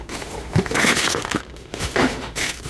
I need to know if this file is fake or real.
fake